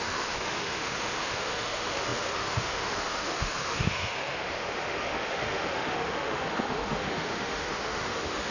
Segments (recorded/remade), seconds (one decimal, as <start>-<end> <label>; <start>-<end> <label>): 0.0-8.5 remade